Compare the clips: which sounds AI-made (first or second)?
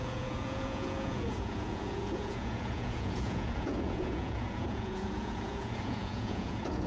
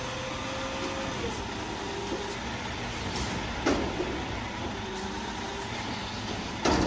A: first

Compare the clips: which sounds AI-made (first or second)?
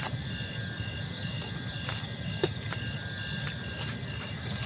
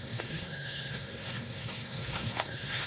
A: second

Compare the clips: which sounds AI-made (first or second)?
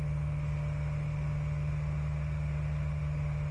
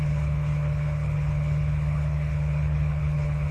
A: second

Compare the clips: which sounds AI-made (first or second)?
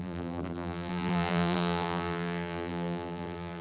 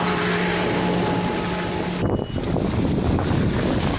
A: first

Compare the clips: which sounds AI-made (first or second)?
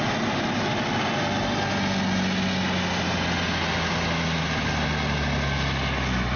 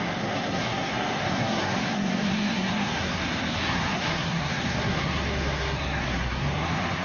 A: second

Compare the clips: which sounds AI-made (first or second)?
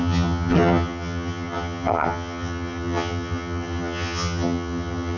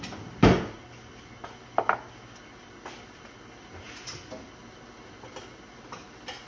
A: first